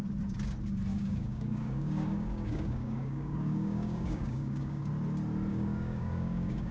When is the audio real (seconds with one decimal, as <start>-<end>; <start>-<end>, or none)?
0.0-0.9; 4.9-5.5